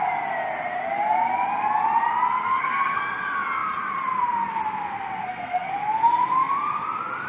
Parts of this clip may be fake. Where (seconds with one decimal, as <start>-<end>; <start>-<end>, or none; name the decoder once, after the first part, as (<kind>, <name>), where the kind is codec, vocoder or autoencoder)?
2.4-3.0 (codec, SNAC); 5.2-5.7